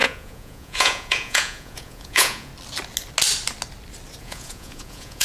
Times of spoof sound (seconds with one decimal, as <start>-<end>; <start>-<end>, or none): 0.0-2.5; 4.2-5.2